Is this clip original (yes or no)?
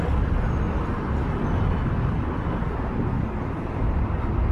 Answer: yes